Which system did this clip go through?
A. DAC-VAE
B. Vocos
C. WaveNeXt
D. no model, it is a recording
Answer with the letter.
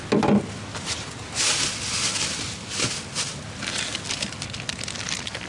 D